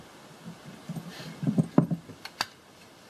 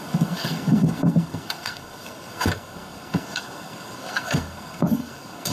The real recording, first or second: first